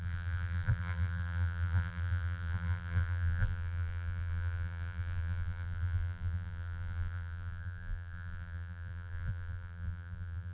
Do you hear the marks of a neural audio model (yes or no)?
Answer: yes